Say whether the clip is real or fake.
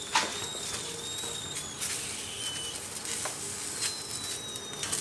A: real